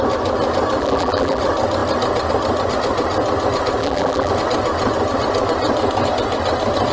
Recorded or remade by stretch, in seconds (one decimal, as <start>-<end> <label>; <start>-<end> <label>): 0.0-0.8 recorded; 0.8-1.4 remade; 1.4-3.8 recorded; 3.8-4.3 remade; 4.3-6.9 recorded